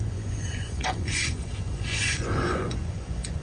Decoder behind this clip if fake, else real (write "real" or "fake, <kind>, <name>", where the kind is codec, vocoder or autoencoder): fake, vocoder, Vocos